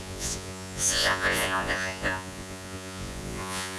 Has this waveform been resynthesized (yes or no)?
yes